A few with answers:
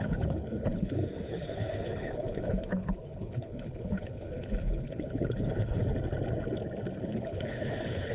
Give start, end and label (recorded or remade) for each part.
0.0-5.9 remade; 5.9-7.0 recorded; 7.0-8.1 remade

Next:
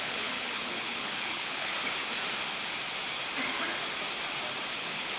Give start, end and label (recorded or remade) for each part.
0.0-1.7 remade; 1.7-4.8 recorded; 4.8-5.2 remade

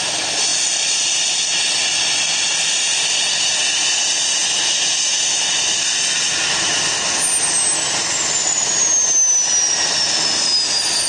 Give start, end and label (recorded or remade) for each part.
0.0-11.1 recorded

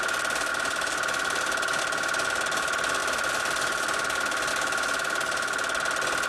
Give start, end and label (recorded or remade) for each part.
0.0-6.3 recorded

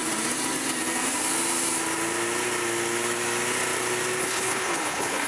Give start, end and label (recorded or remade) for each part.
0.0-4.2 recorded; 4.2-5.3 remade

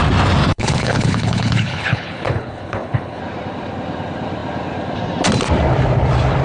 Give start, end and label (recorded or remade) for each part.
0.0-0.4 recorded; 0.4-3.2 remade; 3.2-6.4 recorded

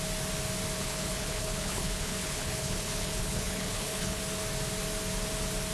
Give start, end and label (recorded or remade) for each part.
0.0-0.8 recorded; 0.8-4.2 remade; 4.2-5.7 recorded

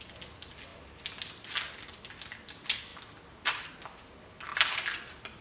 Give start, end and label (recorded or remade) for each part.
0.0-5.4 recorded